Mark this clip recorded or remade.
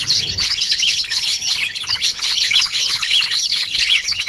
remade